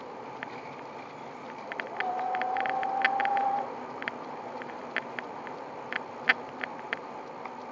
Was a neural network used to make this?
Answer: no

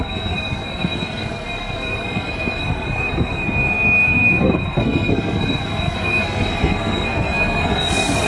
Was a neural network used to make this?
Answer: yes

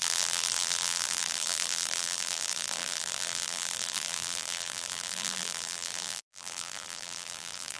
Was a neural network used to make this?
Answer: yes